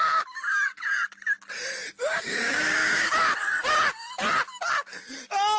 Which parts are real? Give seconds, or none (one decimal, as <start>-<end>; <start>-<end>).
0.0-2.1; 3.1-5.6